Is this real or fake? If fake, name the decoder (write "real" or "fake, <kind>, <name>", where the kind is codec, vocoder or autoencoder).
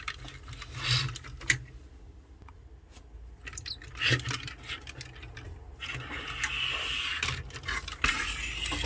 real